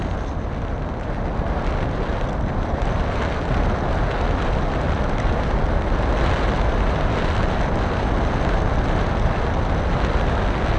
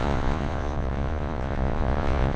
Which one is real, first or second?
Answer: first